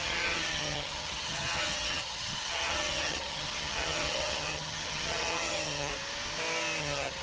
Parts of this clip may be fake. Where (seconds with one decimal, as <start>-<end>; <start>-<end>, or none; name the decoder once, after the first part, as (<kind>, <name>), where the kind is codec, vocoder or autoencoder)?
0.0-5.9 (vocoder, HiFi-GAN); 6.8-7.2